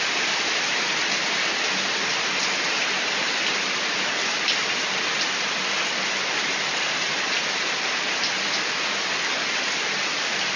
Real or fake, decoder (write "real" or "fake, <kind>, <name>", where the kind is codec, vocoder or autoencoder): real